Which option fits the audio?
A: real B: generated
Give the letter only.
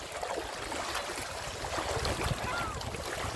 A